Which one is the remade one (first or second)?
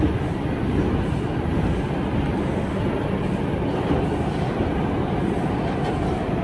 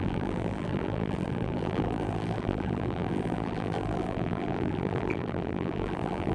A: second